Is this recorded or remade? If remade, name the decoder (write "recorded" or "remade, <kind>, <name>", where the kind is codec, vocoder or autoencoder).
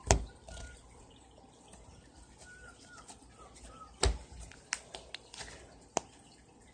recorded